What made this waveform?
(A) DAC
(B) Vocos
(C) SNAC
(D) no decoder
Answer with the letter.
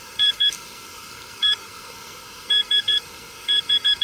C